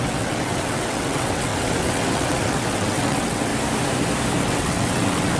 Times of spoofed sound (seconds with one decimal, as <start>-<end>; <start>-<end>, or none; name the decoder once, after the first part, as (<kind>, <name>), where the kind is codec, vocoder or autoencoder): 0.0-3.5 (vocoder, WaveNeXt); 4.4-5.4